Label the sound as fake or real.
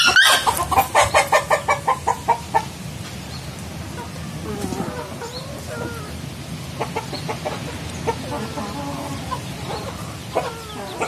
real